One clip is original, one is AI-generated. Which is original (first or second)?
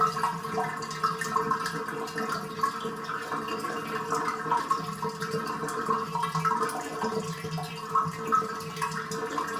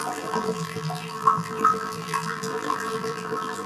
first